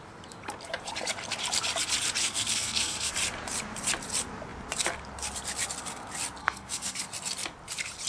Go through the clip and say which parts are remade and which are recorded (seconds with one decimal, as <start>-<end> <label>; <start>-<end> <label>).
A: 0.0-2.2 recorded; 2.2-3.1 remade; 3.1-6.4 recorded; 6.4-7.0 remade; 7.0-8.1 recorded